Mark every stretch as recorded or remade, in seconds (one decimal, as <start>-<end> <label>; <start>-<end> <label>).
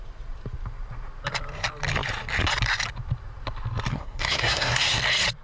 0.0-3.9 recorded; 3.9-5.0 remade; 5.0-5.4 recorded